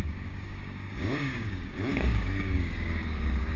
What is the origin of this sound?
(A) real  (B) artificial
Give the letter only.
B